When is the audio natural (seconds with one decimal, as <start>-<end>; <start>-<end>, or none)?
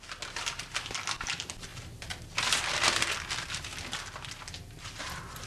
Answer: 0.0-5.5